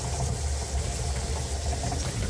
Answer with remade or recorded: recorded